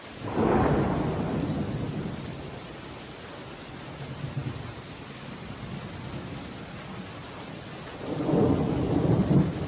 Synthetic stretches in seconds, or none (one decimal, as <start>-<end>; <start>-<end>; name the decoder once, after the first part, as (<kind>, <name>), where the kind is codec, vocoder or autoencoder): none